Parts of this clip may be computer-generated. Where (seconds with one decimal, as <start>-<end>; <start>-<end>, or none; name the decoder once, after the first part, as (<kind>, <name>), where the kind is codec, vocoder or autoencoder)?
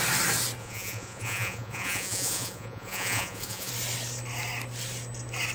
0.6-3.7 (vocoder, Vocos)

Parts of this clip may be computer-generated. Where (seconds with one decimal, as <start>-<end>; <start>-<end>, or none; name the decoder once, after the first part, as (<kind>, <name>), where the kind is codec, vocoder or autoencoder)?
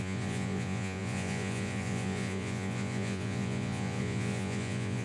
0.0-5.0 (vocoder, Vocos)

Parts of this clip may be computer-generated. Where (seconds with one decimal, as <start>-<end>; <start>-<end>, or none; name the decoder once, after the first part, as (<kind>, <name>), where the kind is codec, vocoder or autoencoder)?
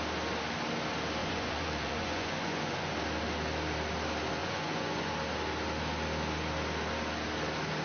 1.2-2.9 (vocoder, Vocos); 4.4-5.1